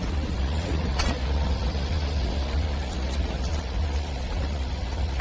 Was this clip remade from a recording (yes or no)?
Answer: yes